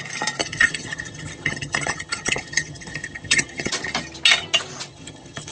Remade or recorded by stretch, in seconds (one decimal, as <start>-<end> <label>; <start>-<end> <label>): 0.0-0.4 recorded; 0.4-3.7 remade; 3.7-4.9 recorded; 4.9-5.5 remade